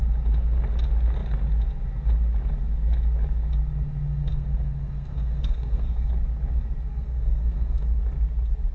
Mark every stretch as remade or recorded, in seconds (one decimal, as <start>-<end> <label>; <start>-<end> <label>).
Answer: 0.0-4.2 recorded; 4.2-6.1 remade; 6.1-6.9 recorded; 6.9-8.0 remade; 8.0-8.7 recorded